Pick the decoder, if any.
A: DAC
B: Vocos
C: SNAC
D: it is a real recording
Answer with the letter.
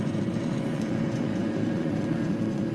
B